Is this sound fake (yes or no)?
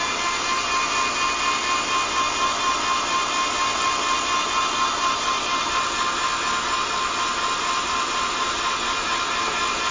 no